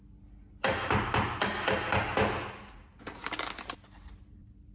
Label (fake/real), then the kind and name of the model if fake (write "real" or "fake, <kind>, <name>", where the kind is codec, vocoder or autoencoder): real